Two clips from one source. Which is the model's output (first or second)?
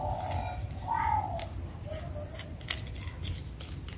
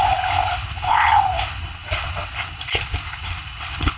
second